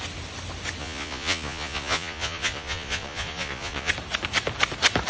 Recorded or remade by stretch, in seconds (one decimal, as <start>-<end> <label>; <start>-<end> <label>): 0.0-0.8 recorded; 0.8-3.9 remade; 3.9-5.1 recorded